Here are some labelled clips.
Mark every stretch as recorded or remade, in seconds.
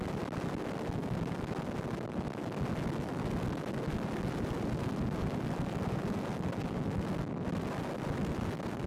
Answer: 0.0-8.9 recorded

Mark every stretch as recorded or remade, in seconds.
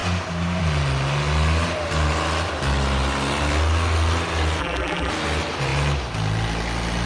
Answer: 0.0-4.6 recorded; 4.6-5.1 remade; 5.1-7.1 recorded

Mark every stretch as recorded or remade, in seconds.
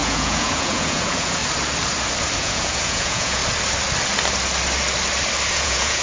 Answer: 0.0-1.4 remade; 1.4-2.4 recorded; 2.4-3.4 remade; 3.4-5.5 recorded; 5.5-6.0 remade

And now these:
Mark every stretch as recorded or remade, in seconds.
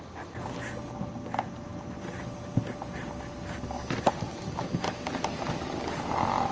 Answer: 0.0-6.5 recorded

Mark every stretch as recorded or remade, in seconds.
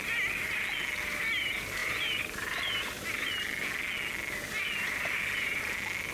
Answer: 0.0-1.8 recorded; 1.8-3.3 remade; 3.3-6.1 recorded